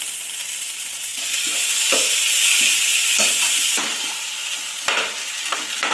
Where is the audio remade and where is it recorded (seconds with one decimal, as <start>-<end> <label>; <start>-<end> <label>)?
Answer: 0.0-4.4 remade; 4.4-5.9 recorded